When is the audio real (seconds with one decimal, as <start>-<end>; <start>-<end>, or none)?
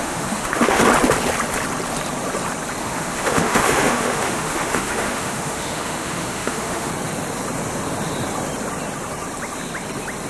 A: 0.8-2.8; 6.9-10.3